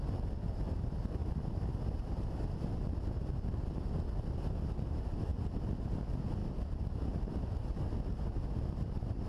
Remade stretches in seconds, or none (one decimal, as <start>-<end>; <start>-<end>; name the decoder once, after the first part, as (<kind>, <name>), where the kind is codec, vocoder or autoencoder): 1.2-2.8 (vocoder, BigVGAN v2)